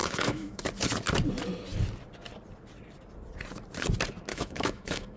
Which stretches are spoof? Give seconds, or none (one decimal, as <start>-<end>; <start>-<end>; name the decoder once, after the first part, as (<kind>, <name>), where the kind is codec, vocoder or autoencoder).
0.0-0.6 (autoencoder, DAC-VAE); 4.3-5.2